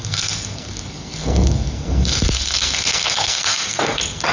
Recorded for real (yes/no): no